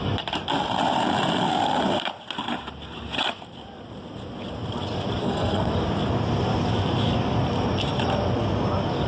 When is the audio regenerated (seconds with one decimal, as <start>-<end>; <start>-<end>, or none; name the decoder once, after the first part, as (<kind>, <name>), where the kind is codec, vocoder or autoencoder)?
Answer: 5.2-5.7 (codec, SNAC)